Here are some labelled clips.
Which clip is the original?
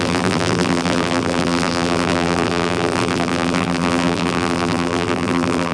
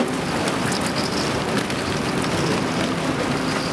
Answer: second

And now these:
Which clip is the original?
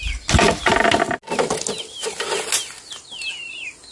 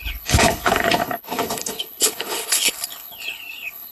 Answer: first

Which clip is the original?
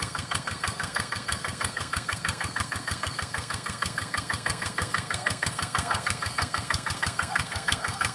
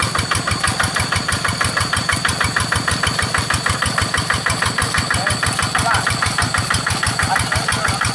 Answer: second